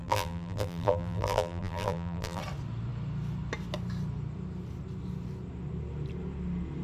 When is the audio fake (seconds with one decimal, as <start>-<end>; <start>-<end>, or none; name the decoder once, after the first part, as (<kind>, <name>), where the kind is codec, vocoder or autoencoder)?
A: 0.0-2.4 (vocoder, BigVGAN v2)